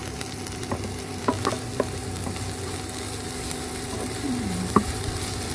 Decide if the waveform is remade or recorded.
remade